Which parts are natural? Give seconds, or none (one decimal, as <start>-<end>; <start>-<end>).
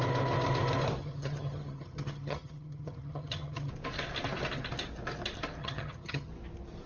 0.0-1.0; 3.7-5.6; 6.3-6.9